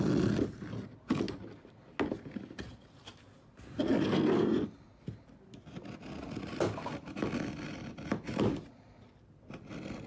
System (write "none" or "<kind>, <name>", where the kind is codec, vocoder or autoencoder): none